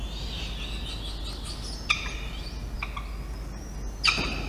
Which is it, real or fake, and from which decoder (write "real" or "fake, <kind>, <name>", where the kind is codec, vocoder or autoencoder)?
real